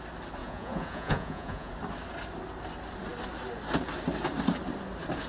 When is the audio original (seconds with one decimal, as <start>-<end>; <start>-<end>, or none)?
0.0-0.4; 1.7-5.3